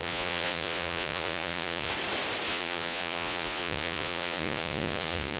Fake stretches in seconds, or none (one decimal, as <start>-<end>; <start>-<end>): 0.0-1.9; 2.5-5.4